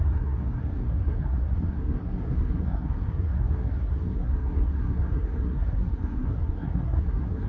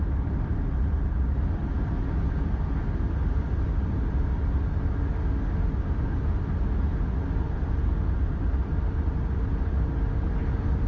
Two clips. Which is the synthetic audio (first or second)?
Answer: first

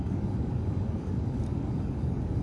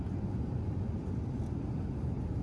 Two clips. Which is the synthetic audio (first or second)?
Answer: first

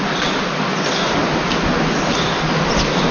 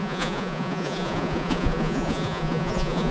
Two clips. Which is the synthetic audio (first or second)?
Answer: second